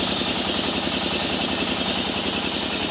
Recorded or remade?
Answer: recorded